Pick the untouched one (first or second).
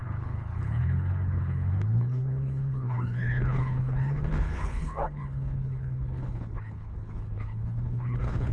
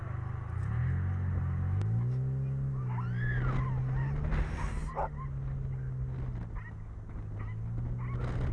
second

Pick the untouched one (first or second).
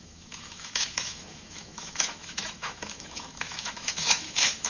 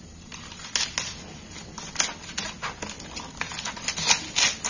second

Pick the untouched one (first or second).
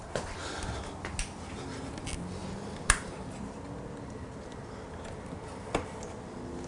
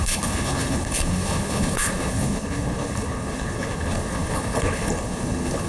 first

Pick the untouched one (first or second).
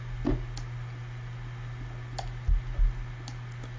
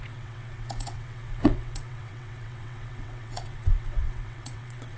first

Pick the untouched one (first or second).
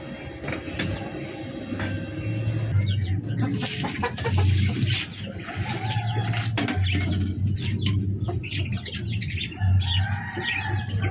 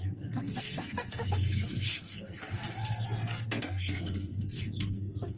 first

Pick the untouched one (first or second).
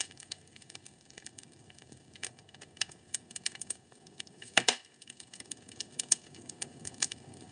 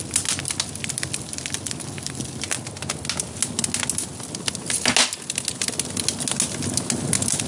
second